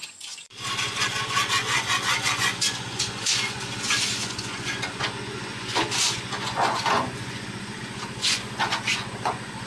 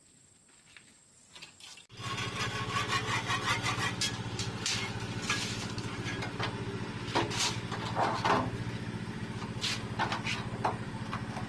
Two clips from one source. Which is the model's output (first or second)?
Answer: first